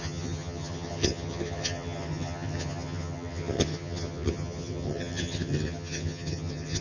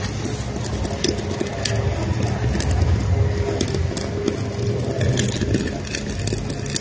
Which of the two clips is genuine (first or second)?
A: second